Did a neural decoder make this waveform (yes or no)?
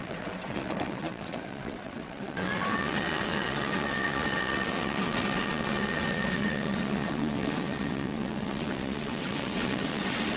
yes